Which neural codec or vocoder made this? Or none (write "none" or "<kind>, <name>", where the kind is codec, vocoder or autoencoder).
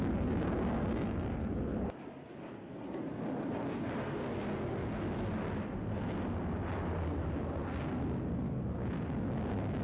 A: none